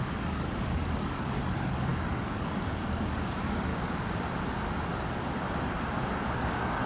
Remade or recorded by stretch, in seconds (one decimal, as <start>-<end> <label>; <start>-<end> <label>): 0.0-3.7 remade; 3.7-6.2 recorded; 6.2-6.8 remade